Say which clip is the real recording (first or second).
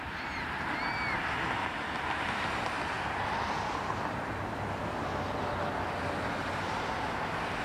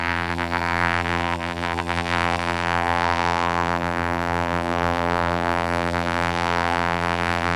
first